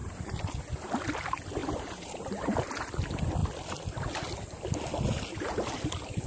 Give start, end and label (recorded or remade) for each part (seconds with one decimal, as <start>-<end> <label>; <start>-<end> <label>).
0.0-0.6 remade; 0.6-1.6 recorded; 1.6-2.7 remade; 2.7-6.3 recorded